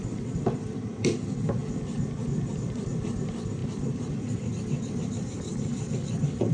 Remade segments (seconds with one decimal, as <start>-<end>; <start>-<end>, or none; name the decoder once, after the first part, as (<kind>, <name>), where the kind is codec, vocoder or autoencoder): 0.0-1.6 (vocoder, BigVGAN v2); 2.6-6.5